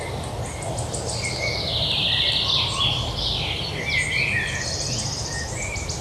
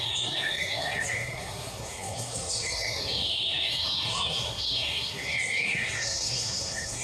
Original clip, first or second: first